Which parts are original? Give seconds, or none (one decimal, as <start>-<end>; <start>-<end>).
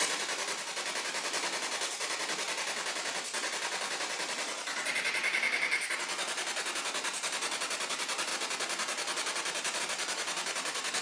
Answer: 0.0-11.0